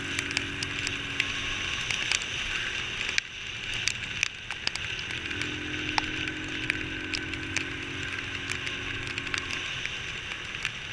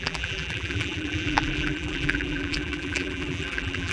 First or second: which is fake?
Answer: second